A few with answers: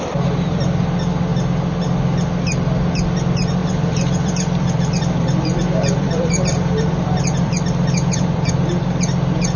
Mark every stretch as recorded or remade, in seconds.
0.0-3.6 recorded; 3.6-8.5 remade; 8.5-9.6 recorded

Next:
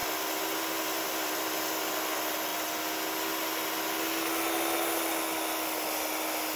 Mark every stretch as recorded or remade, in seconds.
0.0-1.5 remade; 1.5-6.6 recorded

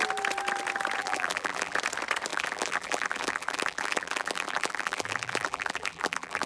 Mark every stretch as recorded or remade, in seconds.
0.0-1.0 recorded; 1.0-1.8 remade; 1.8-2.3 recorded; 2.3-6.5 remade

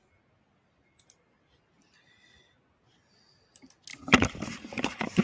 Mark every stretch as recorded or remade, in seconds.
0.0-3.9 recorded; 3.9-5.2 remade